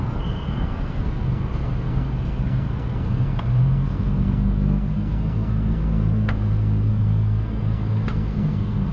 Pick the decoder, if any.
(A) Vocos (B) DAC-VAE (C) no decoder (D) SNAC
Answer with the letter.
D